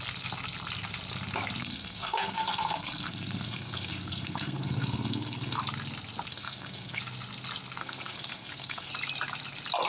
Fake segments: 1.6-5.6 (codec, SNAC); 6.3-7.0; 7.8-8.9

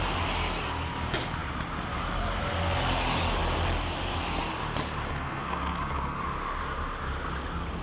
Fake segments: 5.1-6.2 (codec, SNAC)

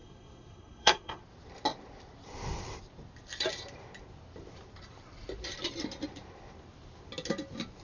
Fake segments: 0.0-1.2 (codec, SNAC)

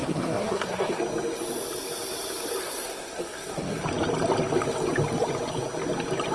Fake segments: 0.0-1.0 (codec, SNAC); 2.6-3.8

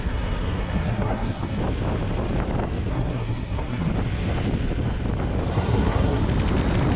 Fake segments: 0.0-1.6 (codec, SNAC); 2.9-3.9; 5.5-6.2

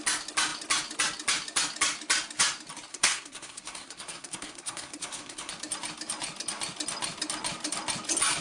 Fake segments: 2.9-5.5 (codec, SNAC)